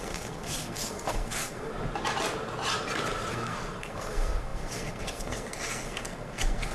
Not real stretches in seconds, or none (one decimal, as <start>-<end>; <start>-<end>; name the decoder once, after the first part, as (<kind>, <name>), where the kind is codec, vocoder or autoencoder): 0.0-1.7 (codec, SNAC); 3.3-6.7